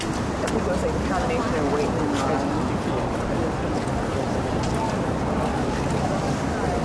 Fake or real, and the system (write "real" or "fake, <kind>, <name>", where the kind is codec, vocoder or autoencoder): real